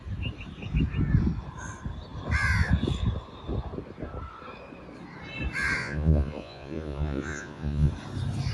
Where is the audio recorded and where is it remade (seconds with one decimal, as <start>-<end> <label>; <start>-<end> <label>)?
0.0-5.8 recorded; 5.8-7.9 remade; 7.9-8.5 recorded